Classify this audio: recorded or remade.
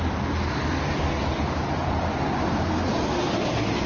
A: recorded